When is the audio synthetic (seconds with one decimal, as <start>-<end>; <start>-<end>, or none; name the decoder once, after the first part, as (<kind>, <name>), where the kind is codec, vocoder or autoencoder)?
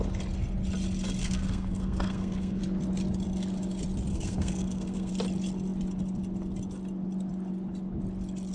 1.2-2.6 (codec, SNAC); 4.1-5.1